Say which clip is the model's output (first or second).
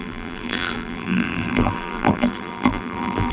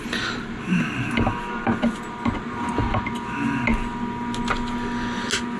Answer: first